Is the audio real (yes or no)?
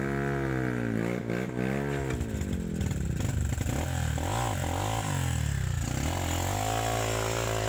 yes